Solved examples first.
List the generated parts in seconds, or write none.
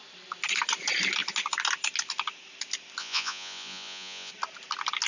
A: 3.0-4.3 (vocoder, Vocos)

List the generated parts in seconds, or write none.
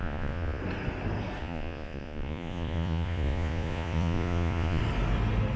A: 0.0-0.6 (vocoder, Vocos); 1.4-4.8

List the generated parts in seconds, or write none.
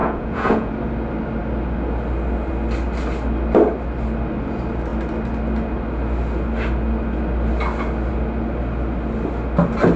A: 0.0-0.7 (vocoder, Vocos)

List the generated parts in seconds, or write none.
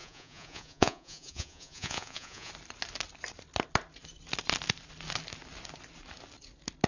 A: 0.0-2.5 (vocoder, Vocos)